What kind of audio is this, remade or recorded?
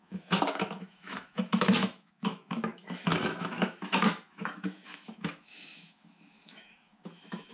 remade